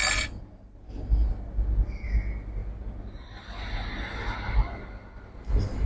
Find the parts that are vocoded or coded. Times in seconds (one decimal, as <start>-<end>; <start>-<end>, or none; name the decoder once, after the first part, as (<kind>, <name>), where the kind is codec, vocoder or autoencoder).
none